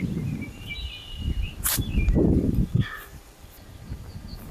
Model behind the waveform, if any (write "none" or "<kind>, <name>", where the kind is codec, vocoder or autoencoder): vocoder, BigVGAN v2